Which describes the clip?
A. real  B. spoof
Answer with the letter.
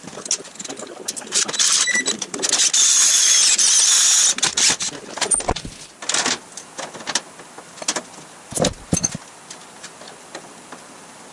A